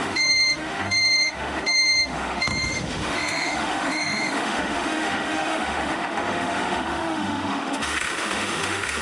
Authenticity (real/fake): fake